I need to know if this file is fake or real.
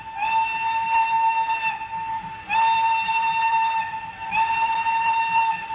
real